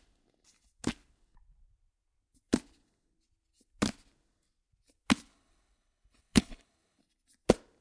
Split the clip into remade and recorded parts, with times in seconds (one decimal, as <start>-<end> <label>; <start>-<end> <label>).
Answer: 0.0-5.3 recorded; 5.3-7.0 remade; 7.0-7.8 recorded